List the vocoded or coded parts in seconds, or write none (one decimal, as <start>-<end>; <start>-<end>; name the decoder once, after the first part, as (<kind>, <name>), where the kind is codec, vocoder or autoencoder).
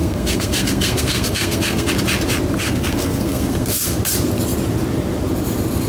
0.0-1.9 (codec, SNAC); 2.6-4.0